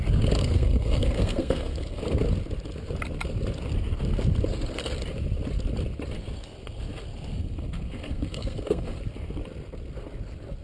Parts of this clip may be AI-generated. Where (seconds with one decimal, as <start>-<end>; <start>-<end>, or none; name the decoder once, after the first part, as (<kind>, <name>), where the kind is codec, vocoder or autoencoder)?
0.4-2.0 (codec, SNAC); 7.4-9.0